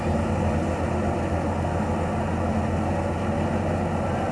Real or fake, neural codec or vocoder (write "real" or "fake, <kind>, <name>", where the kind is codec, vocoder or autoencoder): real